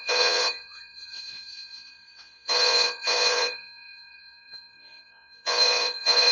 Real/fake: fake